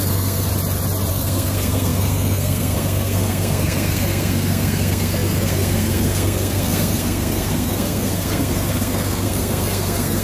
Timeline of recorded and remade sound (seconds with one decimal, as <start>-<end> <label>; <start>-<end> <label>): 0.0-0.5 remade; 0.5-1.1 recorded; 1.1-10.2 remade